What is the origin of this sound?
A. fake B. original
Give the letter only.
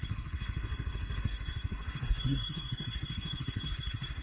A